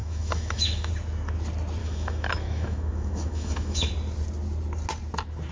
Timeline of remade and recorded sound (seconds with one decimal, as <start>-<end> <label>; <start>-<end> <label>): 0.0-0.9 remade; 0.9-1.8 recorded; 1.8-3.9 remade; 3.9-5.5 recorded